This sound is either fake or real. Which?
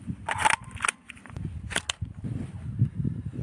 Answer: real